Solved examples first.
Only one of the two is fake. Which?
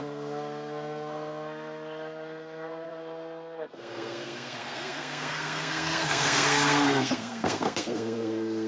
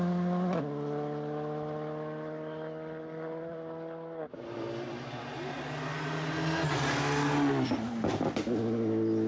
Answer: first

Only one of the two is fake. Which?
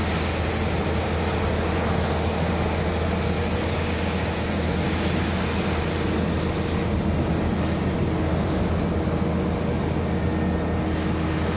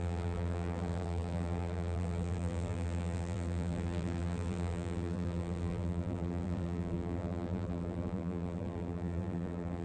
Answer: second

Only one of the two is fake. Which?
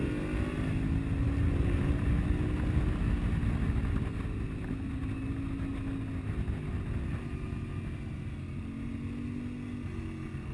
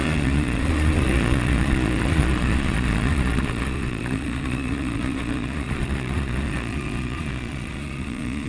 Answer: second